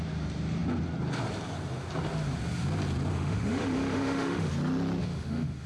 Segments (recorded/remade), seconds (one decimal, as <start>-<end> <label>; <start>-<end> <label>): 0.0-3.1 recorded; 3.1-4.5 remade; 4.5-5.0 recorded; 5.0-5.7 remade